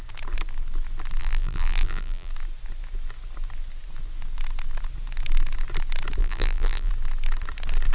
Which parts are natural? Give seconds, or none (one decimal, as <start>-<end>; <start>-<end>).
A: 0.0-1.2; 2.3-6.2; 6.9-7.9